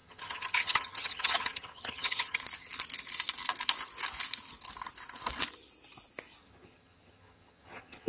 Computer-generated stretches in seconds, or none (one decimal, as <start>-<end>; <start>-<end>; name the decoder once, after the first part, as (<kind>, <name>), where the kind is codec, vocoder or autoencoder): 0.0-2.4 (vocoder, HiFi-GAN); 6.4-8.1

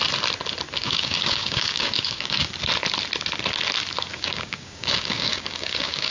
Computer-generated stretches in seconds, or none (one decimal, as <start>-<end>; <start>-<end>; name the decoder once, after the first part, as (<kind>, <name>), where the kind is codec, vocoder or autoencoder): 0.8-2.5 (codec, DAC); 4.1-6.1

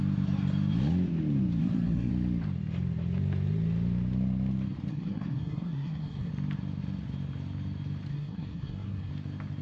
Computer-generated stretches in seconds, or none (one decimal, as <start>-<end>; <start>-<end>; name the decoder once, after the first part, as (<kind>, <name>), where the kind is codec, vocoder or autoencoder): 1.6-2.1 (codec, SNAC); 4.9-6.3; 8.1-9.1

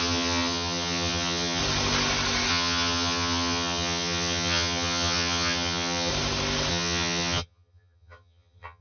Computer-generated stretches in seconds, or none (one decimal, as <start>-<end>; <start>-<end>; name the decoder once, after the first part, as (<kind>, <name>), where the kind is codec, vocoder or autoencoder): 0.0-1.6 (vocoder, HiFi-GAN); 2.5-6.1; 6.7-8.8